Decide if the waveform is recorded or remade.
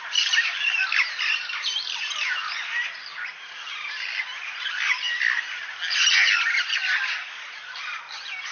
recorded